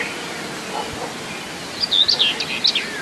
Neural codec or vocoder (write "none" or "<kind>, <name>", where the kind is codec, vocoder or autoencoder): none